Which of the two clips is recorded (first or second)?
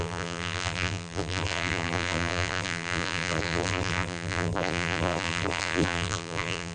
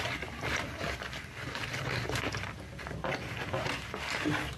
second